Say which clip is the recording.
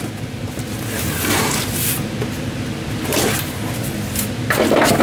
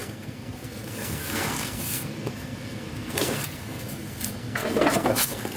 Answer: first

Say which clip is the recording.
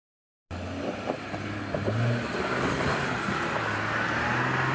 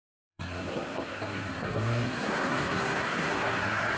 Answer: first